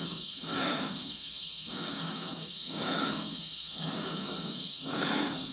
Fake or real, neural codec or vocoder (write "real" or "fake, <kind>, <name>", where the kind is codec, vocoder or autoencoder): fake, codec, SNAC